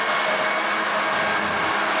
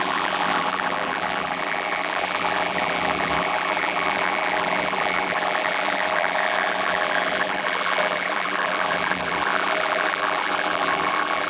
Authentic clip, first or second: first